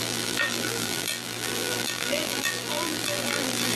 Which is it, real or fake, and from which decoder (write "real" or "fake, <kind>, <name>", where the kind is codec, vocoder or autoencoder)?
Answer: fake, vocoder, BigVGAN v2